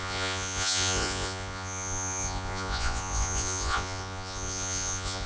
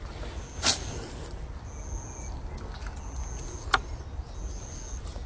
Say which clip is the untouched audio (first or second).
second